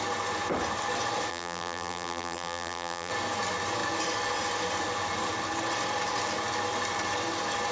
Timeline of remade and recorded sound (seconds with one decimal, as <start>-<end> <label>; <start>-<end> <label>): 0.0-1.3 recorded; 1.3-3.1 remade; 3.1-7.7 recorded